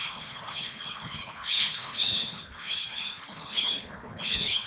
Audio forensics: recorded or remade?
remade